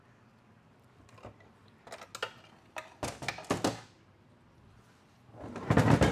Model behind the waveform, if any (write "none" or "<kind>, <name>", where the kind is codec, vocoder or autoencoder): none